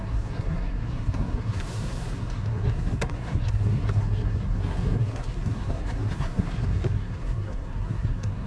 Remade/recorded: remade